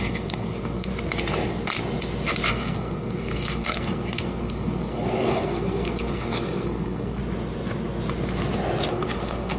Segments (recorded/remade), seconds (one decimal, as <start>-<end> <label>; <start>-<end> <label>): 0.0-0.9 remade; 0.9-2.5 recorded; 2.5-7.2 remade; 7.2-8.9 recorded; 8.9-9.6 remade